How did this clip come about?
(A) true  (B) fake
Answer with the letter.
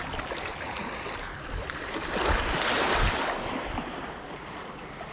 A